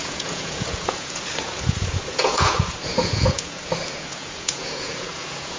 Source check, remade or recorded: remade